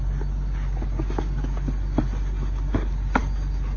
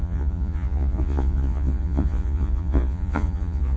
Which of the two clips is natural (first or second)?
first